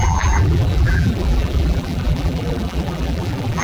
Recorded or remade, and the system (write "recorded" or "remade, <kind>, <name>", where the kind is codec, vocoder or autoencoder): remade, vocoder, BigVGAN v2